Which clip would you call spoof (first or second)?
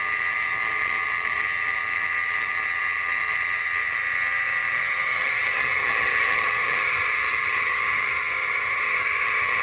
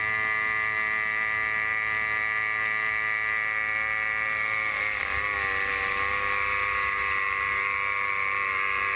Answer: first